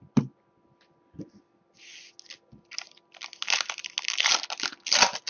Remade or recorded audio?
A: recorded